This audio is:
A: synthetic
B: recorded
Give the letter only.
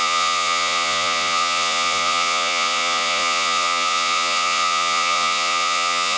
A